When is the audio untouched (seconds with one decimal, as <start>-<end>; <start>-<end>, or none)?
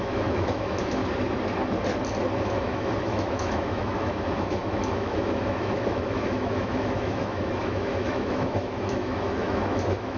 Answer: 1.0-2.4